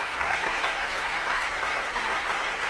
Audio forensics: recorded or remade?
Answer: remade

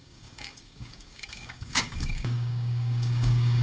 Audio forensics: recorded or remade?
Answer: remade